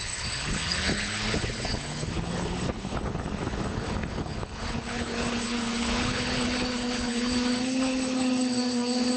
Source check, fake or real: fake